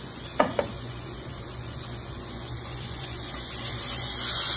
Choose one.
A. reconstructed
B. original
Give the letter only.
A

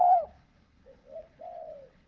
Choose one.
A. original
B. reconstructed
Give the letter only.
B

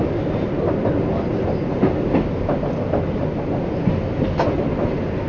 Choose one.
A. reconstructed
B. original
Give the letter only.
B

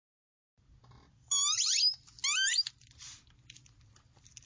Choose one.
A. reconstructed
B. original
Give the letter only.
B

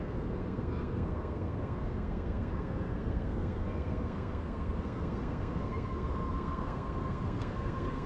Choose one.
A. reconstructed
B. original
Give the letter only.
A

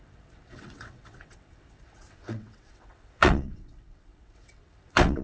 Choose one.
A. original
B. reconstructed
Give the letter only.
B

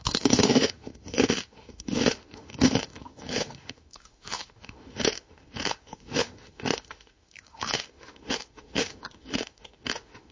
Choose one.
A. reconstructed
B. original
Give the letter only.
A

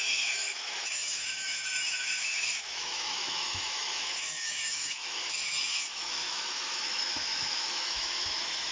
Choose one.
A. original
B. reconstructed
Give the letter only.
B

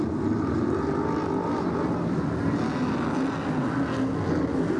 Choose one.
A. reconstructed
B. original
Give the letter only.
B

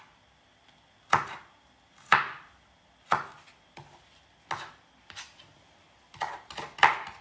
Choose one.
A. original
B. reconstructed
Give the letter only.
A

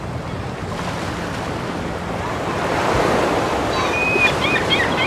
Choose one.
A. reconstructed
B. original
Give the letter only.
B